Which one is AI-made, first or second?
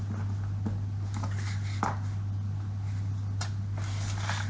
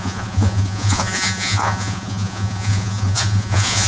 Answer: second